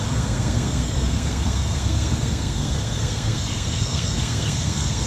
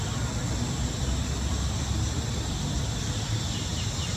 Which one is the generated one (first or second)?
first